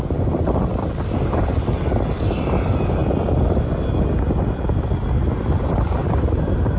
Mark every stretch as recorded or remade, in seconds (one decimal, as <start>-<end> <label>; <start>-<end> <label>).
0.0-6.8 recorded